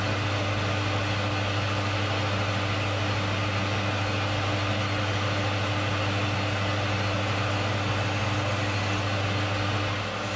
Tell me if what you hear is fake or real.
real